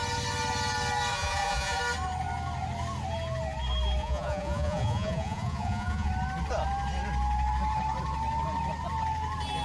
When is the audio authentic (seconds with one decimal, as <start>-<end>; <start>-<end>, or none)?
0.0-1.1; 1.8-4.0; 6.1-9.6